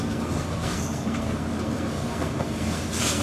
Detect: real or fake fake